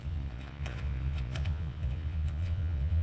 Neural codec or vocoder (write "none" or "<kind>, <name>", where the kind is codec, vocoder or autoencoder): vocoder, Vocos